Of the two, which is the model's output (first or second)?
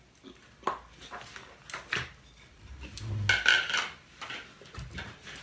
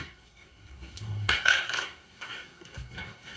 second